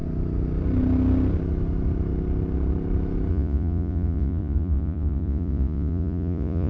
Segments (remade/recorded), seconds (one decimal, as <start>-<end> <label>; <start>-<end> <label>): 0.0-3.3 recorded; 3.3-6.7 remade